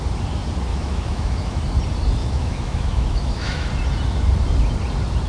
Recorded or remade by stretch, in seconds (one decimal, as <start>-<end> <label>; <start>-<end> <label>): 0.0-0.7 recorded; 0.7-1.6 remade; 1.6-2.2 recorded; 2.2-3.7 remade; 3.7-5.3 recorded